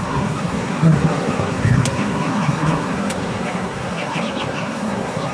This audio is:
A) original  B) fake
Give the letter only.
B